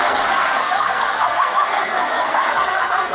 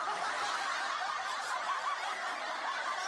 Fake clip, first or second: first